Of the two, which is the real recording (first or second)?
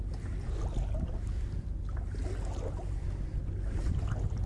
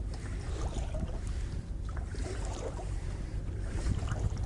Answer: first